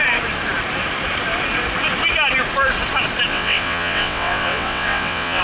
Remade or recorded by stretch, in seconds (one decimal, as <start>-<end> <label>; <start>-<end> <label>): 0.0-3.3 recorded; 3.3-5.4 remade